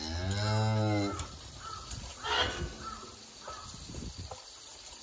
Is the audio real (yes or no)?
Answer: yes